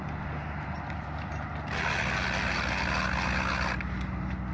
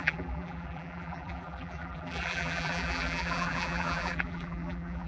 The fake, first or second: second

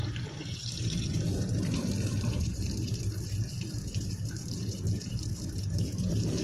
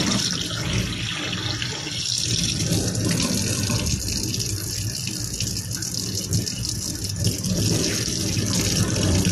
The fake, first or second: first